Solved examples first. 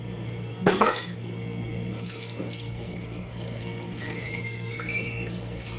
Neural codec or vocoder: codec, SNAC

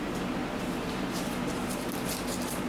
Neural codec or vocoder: none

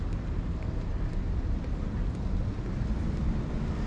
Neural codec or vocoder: none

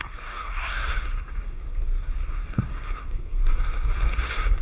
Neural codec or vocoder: codec, SNAC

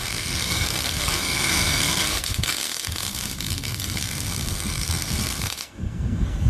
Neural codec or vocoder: codec, SNAC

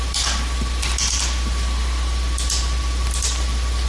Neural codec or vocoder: none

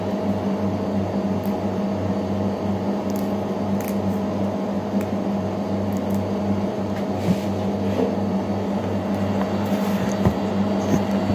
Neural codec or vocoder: none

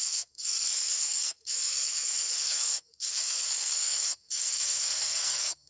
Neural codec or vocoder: codec, SNAC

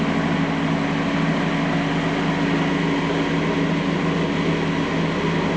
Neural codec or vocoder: none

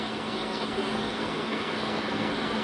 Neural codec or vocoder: codec, SNAC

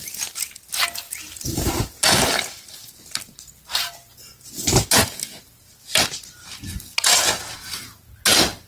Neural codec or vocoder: none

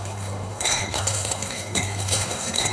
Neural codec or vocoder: codec, SNAC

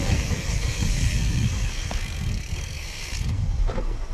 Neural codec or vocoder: codec, SNAC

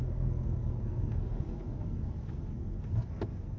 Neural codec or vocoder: codec, SNAC